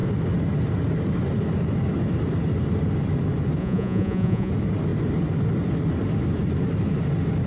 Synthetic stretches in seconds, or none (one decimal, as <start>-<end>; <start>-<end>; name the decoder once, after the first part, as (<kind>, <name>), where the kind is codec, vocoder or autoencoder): 3.6-4.5 (vocoder, Vocos)